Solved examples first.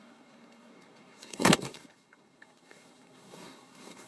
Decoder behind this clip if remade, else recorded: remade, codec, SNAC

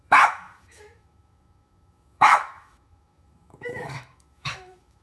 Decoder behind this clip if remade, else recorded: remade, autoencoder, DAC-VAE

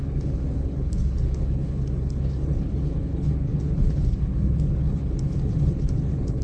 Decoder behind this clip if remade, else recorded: remade, codec, HILCodec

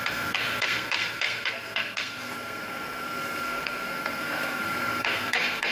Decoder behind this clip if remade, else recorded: remade, codec, SNAC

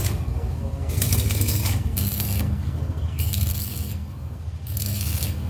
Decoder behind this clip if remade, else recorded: remade, codec, SNAC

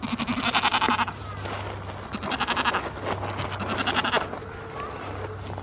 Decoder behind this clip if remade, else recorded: recorded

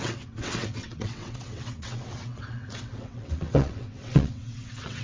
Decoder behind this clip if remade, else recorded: remade, vocoder, WaveNeXt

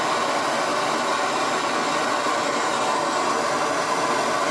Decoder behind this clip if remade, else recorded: recorded